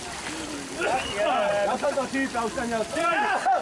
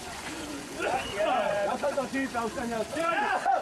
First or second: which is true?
first